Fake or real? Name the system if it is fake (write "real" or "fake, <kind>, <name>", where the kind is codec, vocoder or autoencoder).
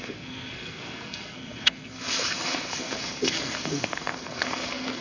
fake, codec, SNAC